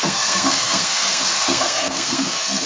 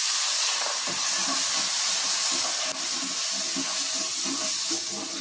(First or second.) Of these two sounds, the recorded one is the second